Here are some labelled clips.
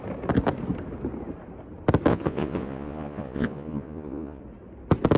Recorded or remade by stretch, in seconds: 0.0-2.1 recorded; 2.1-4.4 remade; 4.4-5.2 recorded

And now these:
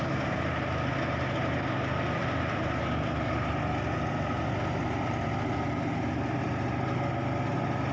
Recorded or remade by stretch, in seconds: 0.0-2.2 recorded; 2.2-2.8 remade; 2.8-7.9 recorded

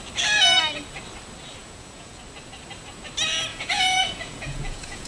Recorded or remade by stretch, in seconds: 0.0-1.6 recorded; 1.6-2.2 remade; 2.2-3.5 recorded; 3.5-5.1 remade

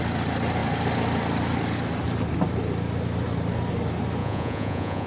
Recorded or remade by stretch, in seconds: 0.0-4.2 recorded; 4.2-5.1 remade

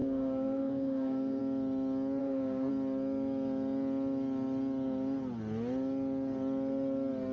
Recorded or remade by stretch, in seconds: 0.0-1.4 remade; 1.4-2.2 recorded; 2.2-2.7 remade; 2.7-7.3 recorded